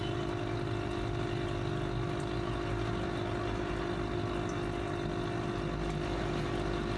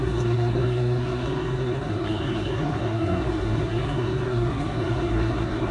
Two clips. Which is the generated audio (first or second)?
second